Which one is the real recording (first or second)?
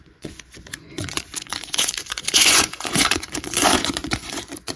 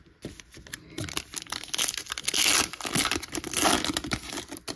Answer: second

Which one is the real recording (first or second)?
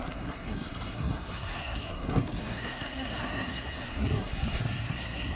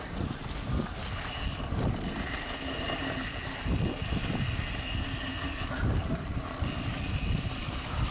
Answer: second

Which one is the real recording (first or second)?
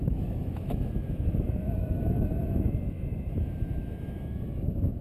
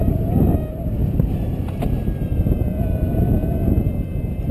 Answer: second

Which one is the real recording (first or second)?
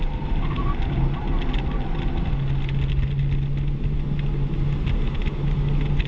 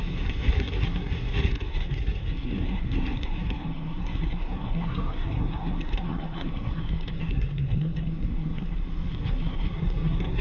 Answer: first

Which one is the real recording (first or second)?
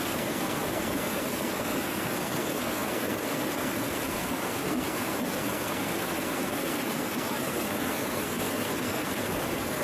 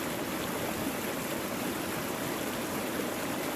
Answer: second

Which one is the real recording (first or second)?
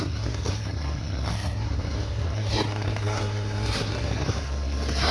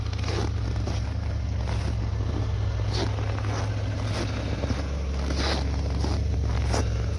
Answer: second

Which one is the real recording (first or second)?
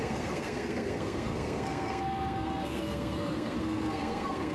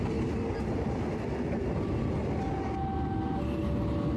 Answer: second